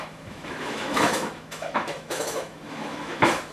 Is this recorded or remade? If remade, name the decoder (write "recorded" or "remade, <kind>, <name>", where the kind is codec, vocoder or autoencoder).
remade, autoencoder, DAC-VAE